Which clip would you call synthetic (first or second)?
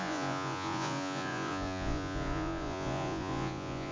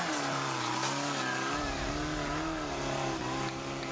first